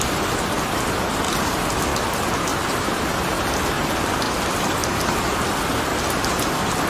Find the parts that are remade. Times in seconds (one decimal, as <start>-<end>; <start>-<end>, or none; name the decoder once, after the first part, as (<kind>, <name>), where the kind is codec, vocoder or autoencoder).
2.5-3.3 (vocoder, BigVGAN v2); 4.8-6.9